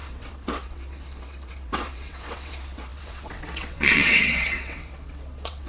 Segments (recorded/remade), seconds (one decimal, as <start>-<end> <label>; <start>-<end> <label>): 0.0-5.7 remade